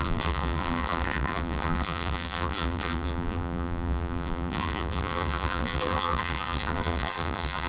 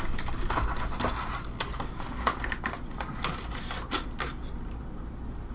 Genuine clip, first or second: second